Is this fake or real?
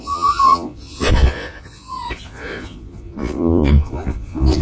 fake